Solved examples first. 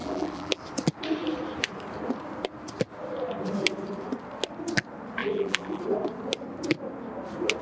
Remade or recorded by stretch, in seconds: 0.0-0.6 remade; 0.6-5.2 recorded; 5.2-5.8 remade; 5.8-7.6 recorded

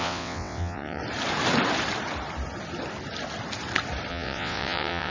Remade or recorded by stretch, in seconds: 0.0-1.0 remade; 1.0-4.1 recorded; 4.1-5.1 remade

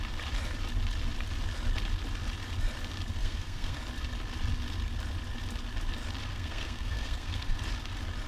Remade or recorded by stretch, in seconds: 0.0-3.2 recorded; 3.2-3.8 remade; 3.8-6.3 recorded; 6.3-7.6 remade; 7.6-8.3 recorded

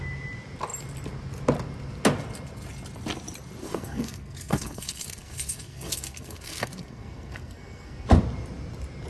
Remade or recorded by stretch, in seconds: 0.0-3.6 recorded; 3.6-8.1 remade; 8.1-9.1 recorded

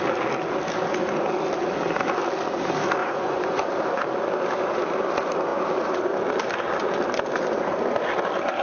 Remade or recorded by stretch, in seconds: 0.0-3.0 recorded; 3.0-3.7 remade; 3.7-8.6 recorded

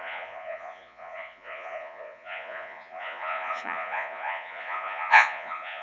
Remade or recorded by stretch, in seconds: 0.0-5.8 remade

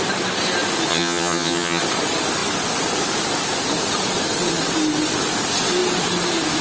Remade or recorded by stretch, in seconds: 0.0-0.9 recorded; 0.9-1.8 remade; 1.8-6.6 recorded

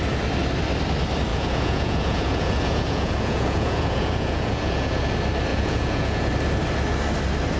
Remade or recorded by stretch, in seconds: 0.0-1.3 recorded; 1.3-5.0 remade; 5.0-5.5 recorded; 5.5-6.3 remade; 6.3-7.6 recorded